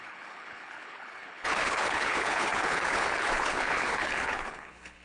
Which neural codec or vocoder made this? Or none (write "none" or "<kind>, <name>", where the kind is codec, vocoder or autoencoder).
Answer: codec, HILCodec